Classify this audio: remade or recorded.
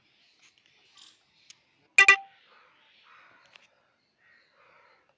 recorded